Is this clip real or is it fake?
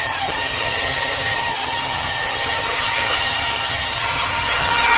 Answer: fake